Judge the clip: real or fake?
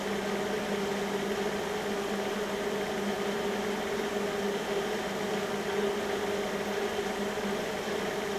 real